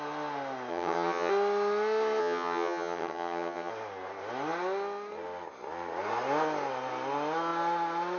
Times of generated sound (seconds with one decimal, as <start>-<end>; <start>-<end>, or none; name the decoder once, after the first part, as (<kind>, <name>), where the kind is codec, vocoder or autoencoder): 0.7-1.3 (vocoder, HiFi-GAN); 2.2-3.7

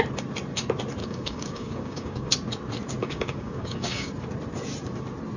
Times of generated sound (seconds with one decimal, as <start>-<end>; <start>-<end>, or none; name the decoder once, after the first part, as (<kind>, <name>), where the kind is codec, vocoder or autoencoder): 1.0-2.3 (codec, DAC); 3.0-4.1

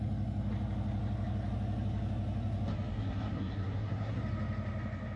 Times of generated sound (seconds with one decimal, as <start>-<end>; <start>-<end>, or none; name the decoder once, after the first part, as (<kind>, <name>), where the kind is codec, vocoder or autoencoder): 2.9-4.2 (codec, SNAC)